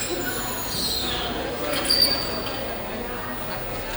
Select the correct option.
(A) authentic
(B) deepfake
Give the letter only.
A